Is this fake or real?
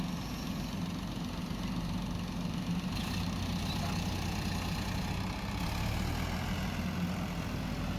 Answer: real